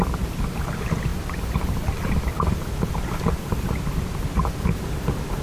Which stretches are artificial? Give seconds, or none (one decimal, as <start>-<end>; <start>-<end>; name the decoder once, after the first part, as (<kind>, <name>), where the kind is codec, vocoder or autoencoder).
none